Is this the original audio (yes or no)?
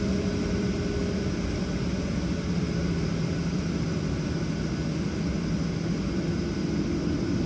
yes